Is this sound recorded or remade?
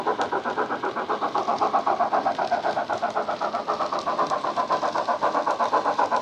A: recorded